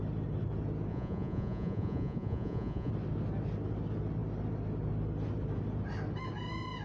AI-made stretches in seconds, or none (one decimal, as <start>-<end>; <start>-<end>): 0.9-2.9